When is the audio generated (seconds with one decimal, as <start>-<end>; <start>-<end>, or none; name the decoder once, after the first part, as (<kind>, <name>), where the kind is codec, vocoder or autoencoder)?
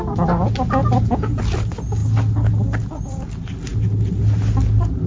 0.8-1.4 (vocoder, Vocos)